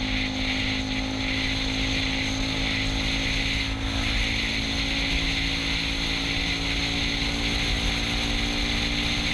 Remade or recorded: recorded